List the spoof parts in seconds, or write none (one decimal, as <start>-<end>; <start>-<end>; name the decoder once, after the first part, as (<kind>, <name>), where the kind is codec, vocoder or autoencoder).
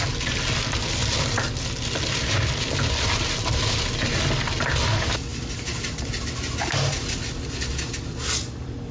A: none